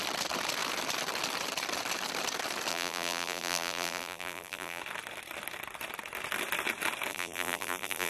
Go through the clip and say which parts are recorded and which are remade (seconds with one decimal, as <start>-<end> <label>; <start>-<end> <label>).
0.0-2.7 recorded; 2.7-4.8 remade; 4.8-7.1 recorded; 7.1-8.1 remade